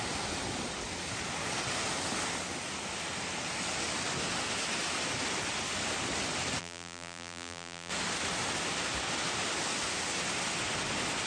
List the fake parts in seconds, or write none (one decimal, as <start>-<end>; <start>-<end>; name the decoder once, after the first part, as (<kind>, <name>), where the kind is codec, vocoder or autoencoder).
6.6-7.9 (vocoder, BigVGAN v2)